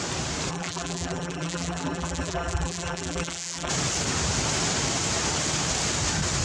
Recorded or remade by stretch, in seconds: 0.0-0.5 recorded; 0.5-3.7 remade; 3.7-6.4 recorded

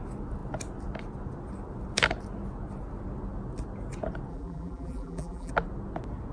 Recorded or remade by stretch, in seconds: 0.0-4.3 recorded; 4.3-5.5 remade; 5.5-6.3 recorded

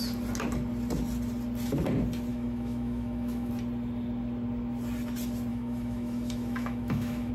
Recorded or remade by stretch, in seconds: 0.0-2.3 recorded; 2.3-3.5 remade; 3.5-5.5 recorded; 5.5-7.3 remade